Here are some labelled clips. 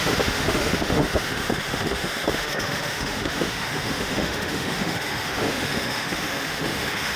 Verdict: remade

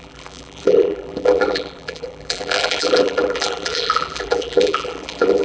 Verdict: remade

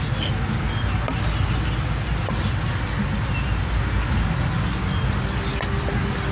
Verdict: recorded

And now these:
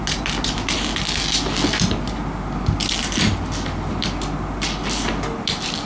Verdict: recorded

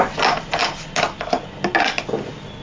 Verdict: recorded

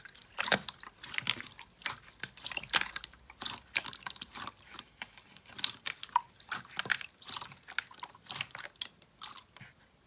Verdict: recorded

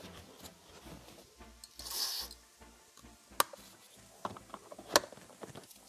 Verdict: recorded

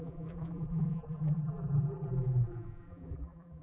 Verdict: remade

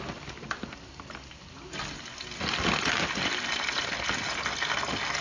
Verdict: recorded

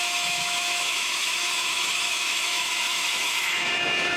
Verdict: remade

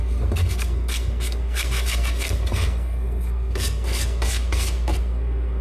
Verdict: remade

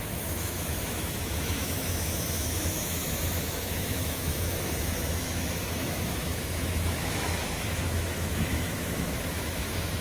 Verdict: remade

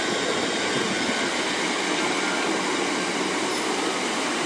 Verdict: recorded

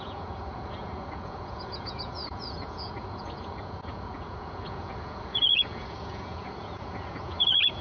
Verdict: remade